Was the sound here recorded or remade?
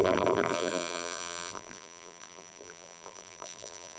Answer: remade